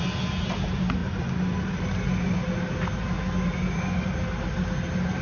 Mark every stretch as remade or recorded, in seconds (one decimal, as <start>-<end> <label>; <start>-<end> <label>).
0.0-5.2 recorded